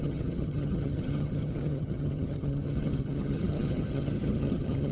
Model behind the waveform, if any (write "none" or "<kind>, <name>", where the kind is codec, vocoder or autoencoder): vocoder, HiFi-GAN